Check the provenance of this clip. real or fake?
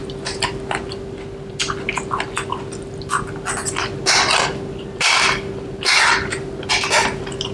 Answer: real